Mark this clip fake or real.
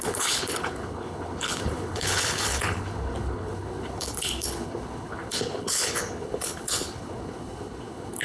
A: fake